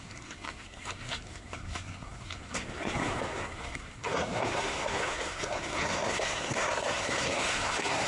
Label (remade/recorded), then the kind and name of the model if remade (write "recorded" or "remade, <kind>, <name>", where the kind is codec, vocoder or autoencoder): remade, codec, SNAC